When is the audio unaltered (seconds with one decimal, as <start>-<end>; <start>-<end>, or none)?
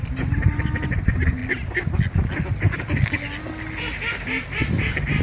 1.4-3.8